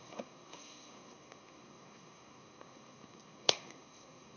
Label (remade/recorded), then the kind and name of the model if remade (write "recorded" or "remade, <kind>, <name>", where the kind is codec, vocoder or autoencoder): remade, codec, SNAC